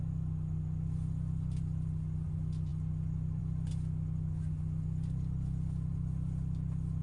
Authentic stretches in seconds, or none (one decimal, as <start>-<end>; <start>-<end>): 0.0-7.0